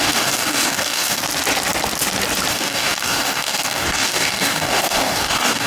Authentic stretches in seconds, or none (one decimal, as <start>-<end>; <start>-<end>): 1.2-2.5